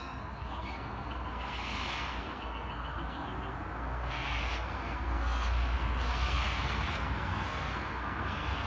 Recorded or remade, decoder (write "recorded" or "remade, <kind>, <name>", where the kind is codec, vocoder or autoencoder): remade, codec, SNAC